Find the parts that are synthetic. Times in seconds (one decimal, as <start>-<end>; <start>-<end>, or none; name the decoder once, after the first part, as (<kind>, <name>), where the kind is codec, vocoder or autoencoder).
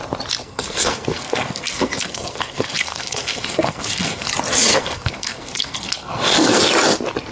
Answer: 0.4-4.3 (codec, SNAC); 4.7-6.6